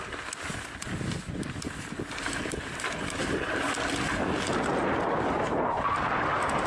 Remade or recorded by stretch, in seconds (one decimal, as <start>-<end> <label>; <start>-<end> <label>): 0.0-6.7 recorded